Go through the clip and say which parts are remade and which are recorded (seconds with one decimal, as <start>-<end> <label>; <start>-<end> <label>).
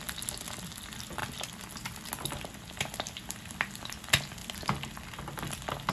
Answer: 0.0-5.9 recorded